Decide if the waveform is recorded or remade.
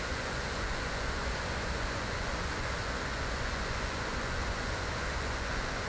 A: remade